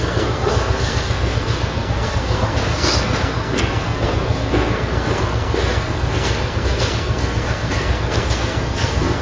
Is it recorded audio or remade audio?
remade